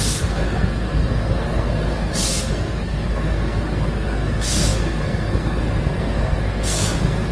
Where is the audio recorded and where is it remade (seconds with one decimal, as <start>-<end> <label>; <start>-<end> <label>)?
0.0-7.3 remade